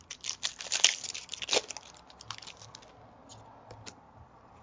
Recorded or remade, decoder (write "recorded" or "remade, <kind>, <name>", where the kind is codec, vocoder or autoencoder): recorded